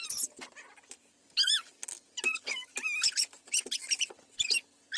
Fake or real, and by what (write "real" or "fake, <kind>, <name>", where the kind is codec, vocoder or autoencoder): real